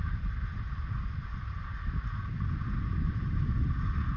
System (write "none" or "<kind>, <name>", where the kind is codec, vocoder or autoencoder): none